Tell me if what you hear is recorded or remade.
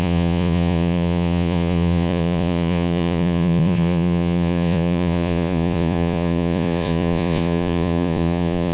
remade